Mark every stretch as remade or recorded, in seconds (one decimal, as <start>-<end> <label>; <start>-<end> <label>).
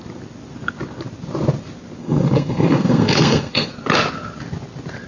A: 0.0-2.0 recorded; 2.0-3.7 remade; 3.7-5.1 recorded